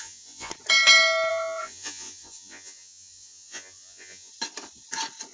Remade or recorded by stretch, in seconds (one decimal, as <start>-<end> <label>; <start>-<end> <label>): 0.0-0.5 remade; 0.5-1.3 recorded; 1.3-4.3 remade; 4.3-5.3 recorded